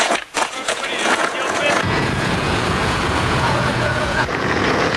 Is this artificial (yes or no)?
yes